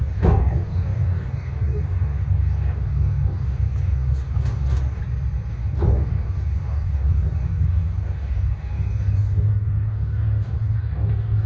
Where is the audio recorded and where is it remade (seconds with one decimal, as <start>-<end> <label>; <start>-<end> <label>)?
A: 0.0-5.0 remade; 5.0-5.5 recorded; 5.5-11.5 remade